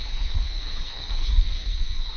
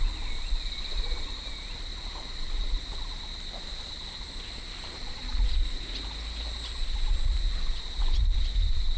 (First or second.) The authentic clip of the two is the second